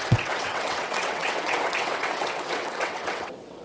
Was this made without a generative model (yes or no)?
no